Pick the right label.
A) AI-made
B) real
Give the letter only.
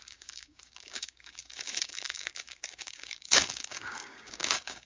A